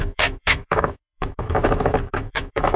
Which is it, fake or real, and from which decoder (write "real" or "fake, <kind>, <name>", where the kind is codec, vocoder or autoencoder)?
fake, autoencoder, DAC-VAE